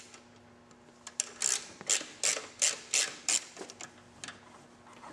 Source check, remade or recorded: recorded